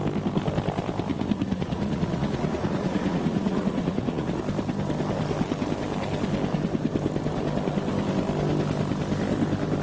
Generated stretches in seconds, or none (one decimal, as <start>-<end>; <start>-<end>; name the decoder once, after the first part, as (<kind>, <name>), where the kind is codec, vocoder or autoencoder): 1.1-4.4 (vocoder, Vocos)

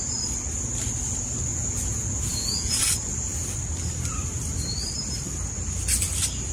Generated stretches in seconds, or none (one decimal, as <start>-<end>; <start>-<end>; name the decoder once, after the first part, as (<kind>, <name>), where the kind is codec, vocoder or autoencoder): 1.5-2.8 (vocoder, Vocos)

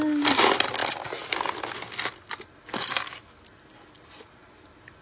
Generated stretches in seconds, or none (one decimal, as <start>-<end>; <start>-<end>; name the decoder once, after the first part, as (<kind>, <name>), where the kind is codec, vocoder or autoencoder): none